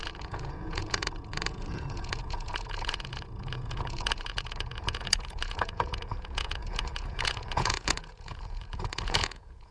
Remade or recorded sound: remade